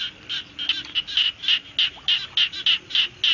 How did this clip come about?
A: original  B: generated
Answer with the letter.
A